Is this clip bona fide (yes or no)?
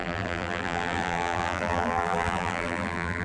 no